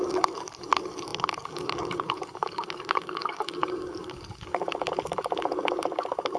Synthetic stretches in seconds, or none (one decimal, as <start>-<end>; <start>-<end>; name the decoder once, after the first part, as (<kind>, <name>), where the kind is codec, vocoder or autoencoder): 0.0-6.4 (codec, DAC)